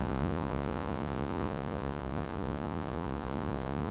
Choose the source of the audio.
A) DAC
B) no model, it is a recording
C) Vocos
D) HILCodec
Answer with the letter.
C